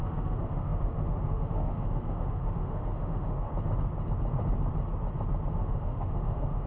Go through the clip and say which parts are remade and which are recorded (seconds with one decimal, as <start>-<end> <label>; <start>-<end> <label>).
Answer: 0.0-3.5 remade; 3.5-5.5 recorded; 5.5-6.7 remade